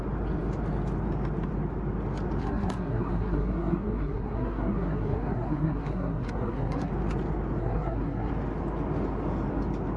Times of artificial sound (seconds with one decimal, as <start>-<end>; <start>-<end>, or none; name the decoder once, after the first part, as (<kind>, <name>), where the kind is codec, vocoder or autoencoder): 2.4-6.9 (codec, SNAC); 7.6-8.3